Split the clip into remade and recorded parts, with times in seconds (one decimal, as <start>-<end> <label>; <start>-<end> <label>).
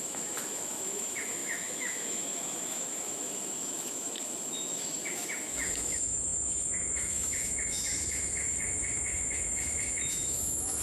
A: 0.0-10.8 remade